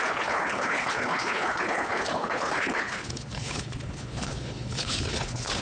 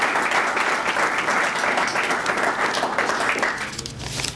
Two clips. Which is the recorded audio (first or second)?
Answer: second